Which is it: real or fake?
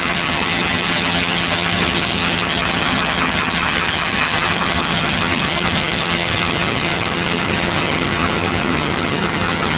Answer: fake